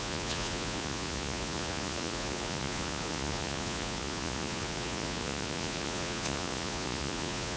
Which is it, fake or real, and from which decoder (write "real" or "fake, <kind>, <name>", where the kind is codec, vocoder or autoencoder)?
fake, vocoder, Vocos